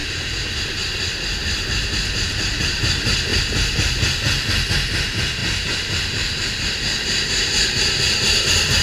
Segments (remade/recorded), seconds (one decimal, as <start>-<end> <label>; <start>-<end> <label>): 0.0-0.6 remade; 0.6-1.4 recorded; 1.4-2.6 remade; 2.6-5.4 recorded; 5.4-8.8 remade